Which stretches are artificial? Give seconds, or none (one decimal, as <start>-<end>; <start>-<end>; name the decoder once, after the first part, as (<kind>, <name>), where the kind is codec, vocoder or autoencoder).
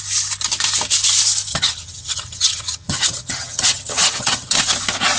1.5-4.6 (vocoder, HiFi-GAN)